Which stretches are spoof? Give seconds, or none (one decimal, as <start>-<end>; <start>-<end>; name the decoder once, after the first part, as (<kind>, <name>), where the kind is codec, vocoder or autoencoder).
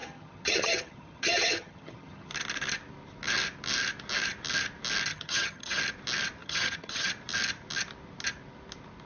0.0-2.3 (vocoder, HiFi-GAN); 5.1-5.8; 6.4-7.1